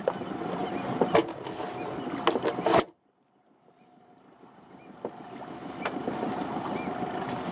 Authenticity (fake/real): real